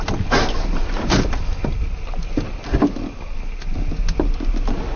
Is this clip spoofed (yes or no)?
no